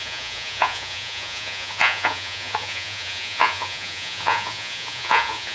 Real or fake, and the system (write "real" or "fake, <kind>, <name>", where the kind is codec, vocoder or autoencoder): fake, vocoder, Vocos